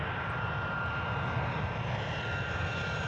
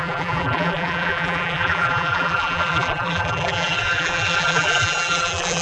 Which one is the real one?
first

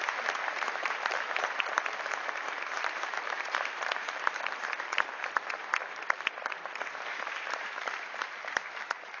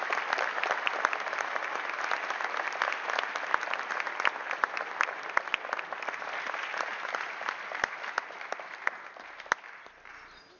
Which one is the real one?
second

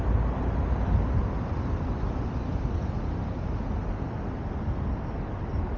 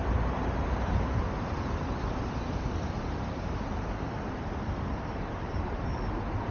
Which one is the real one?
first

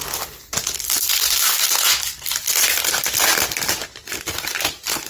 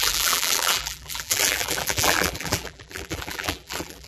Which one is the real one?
first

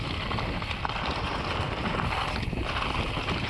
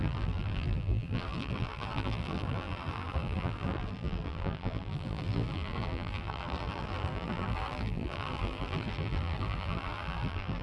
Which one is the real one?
first